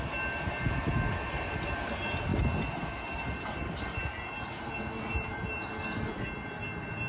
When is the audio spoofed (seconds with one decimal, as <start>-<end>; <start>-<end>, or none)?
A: none

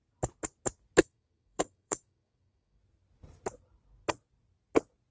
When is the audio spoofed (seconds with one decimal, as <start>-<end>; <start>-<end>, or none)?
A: 1.0-2.8

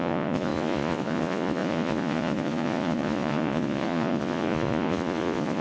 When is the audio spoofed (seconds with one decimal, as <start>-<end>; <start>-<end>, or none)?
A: 0.0-5.6

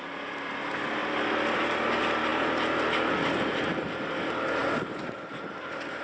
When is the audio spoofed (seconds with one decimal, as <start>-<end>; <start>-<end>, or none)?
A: none

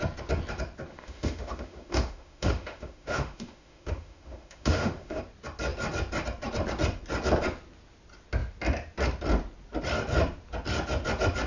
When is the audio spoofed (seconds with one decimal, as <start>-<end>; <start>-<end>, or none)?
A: 0.9-5.2

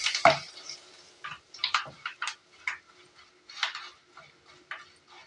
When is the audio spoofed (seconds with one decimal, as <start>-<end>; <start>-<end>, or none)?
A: 0.0-2.4

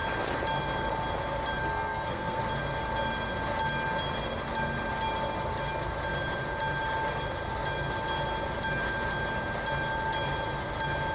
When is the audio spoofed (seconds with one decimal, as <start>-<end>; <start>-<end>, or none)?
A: 1.6-2.4

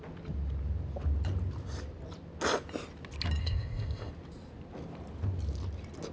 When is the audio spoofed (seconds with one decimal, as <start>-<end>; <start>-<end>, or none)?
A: 3.4-4.1